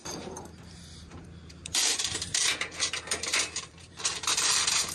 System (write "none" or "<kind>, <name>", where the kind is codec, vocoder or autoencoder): vocoder, BigVGAN v2